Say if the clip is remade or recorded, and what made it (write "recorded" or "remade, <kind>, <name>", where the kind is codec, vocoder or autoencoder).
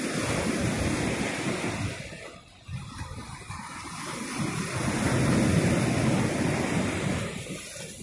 recorded